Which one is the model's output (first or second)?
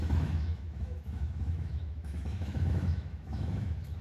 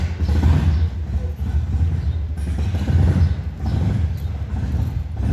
first